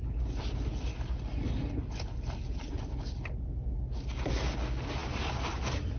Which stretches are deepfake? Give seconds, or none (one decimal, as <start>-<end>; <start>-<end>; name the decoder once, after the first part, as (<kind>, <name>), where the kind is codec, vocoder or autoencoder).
none